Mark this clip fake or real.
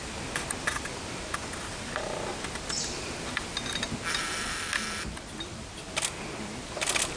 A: real